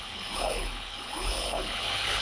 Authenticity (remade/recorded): remade